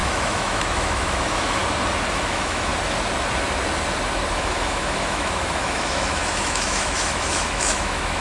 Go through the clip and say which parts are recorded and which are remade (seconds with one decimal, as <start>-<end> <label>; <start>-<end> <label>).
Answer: 0.0-1.6 remade; 1.6-2.1 recorded; 2.1-2.7 remade; 2.7-4.3 recorded; 4.3-8.2 remade